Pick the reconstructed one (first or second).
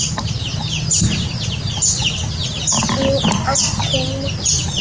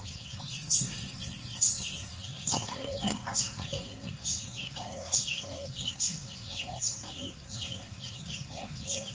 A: second